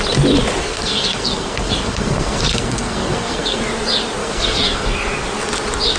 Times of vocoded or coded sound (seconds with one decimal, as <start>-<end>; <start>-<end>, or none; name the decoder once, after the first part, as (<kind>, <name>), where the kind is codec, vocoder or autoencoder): 0.6-3.6 (codec, SNAC); 4.2-5.1